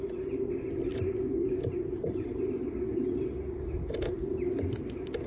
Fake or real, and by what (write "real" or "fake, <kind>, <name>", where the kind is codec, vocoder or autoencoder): real